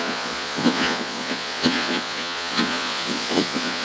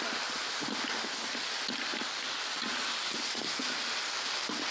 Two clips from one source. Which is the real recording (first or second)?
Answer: second